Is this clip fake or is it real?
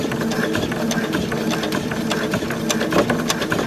real